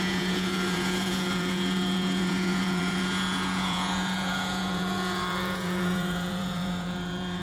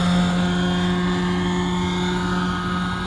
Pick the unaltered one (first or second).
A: second